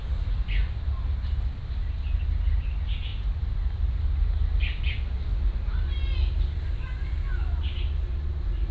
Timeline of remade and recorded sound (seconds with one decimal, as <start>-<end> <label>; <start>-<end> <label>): 0.0-8.7 recorded